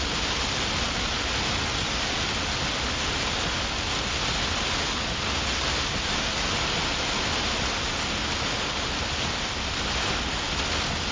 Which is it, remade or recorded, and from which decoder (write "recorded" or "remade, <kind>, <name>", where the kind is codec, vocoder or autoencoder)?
recorded